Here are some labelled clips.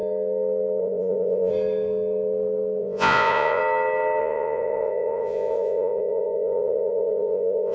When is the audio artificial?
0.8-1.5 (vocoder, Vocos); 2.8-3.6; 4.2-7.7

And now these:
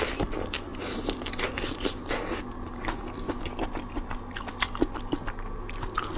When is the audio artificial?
none

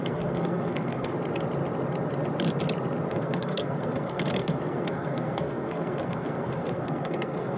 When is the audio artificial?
0.0-1.1 (codec, SNAC); 3.1-7.6

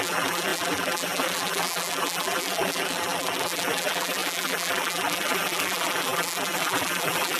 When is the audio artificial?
0.0-7.4 (vocoder, BigVGAN v2)

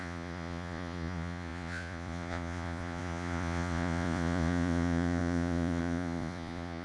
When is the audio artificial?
0.0-6.8 (vocoder, Vocos)

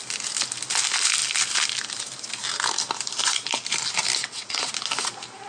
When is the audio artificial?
4.2-4.7 (vocoder, WaveNeXt)

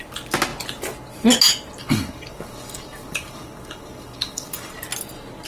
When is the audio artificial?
1.8-4.7 (codec, DAC)

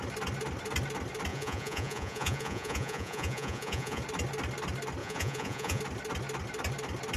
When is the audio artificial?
1.3-4.0 (vocoder, Vocos); 5.0-5.8